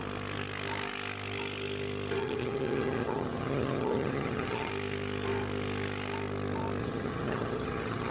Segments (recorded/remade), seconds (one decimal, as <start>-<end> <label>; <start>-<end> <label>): 0.0-2.2 recorded; 2.2-4.7 remade; 4.7-6.8 recorded; 6.8-8.1 remade

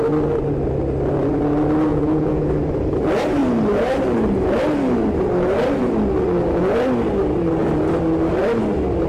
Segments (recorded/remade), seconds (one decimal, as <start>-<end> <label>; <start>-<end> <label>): 0.0-1.9 recorded; 1.9-2.5 remade; 2.5-9.1 recorded

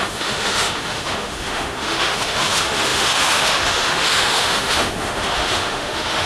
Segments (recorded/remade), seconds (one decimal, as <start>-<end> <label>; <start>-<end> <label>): 0.0-6.3 remade